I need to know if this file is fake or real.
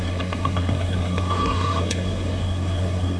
fake